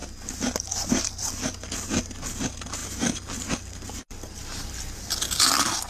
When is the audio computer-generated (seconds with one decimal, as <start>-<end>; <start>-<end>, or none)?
none